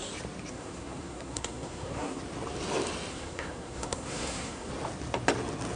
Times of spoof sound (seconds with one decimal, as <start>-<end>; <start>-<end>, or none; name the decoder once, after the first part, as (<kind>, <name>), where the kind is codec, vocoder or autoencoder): 0.5-2.2 (codec, SNAC); 3.1-4.7